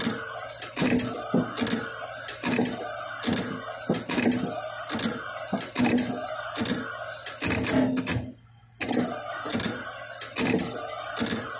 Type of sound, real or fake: real